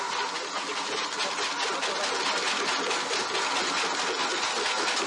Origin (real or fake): real